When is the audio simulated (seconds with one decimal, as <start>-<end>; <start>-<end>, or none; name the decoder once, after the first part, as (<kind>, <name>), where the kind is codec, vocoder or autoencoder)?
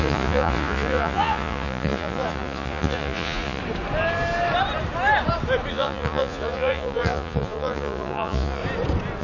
0.0-3.6 (vocoder, Vocos); 5.7-8.6